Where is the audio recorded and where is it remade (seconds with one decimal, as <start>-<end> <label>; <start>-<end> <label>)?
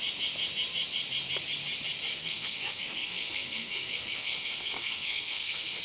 0.0-2.1 recorded; 2.1-5.8 remade